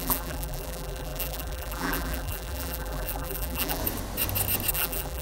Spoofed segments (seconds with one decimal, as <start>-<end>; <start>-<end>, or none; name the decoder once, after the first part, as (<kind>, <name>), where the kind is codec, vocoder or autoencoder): 0.0-3.8 (vocoder, BigVGAN v2); 4.7-5.2